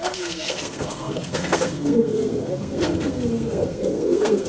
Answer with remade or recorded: remade